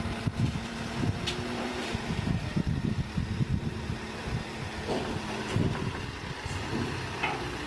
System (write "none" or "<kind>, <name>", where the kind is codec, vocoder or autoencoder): vocoder, BigVGAN v2